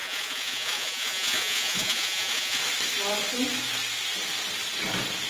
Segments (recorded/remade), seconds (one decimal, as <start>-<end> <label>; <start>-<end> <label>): 0.0-2.6 remade; 2.6-5.3 recorded

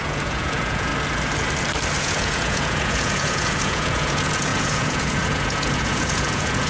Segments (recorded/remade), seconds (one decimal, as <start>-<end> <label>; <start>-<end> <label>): 0.0-0.9 remade; 0.9-2.0 recorded; 2.0-6.7 remade

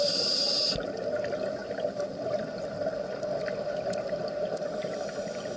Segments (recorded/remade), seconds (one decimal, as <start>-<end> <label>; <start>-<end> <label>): 0.0-5.6 recorded

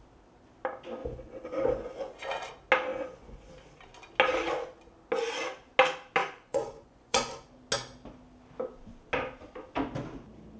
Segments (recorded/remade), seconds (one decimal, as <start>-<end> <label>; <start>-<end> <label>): 0.0-1.0 recorded; 1.0-2.5 remade; 2.5-2.9 recorded; 2.9-3.5 remade; 3.5-6.2 recorded; 6.2-7.5 remade; 7.5-10.6 recorded

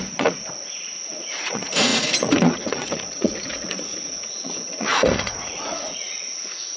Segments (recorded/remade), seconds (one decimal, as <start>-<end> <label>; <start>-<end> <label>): 0.0-6.8 remade

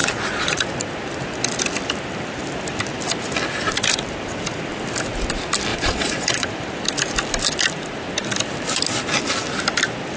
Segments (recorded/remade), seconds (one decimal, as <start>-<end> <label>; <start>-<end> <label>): 0.0-0.8 remade; 0.8-5.7 recorded; 5.7-6.5 remade; 6.5-10.2 recorded

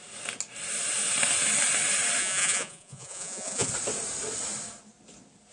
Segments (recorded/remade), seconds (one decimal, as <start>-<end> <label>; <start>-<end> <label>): 0.0-2.2 recorded; 2.2-3.7 remade; 3.7-5.5 recorded

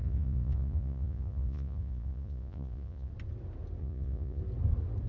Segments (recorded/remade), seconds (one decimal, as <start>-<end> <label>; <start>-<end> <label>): 0.0-3.1 remade; 3.1-3.8 recorded; 3.8-4.4 remade; 4.4-5.1 recorded